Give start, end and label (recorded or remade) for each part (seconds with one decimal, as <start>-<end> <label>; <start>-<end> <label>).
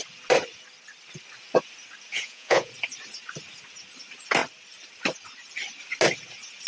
0.0-2.1 recorded; 2.1-2.7 remade; 2.7-6.7 recorded